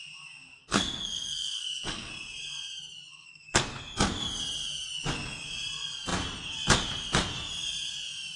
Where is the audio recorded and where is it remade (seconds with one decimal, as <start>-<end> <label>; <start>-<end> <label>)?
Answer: 0.0-0.6 recorded; 0.6-2.1 remade; 2.1-3.1 recorded; 3.1-3.6 remade; 3.6-8.4 recorded